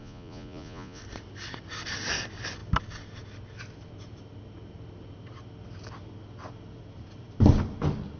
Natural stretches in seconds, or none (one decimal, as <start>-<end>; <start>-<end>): 1.0-8.2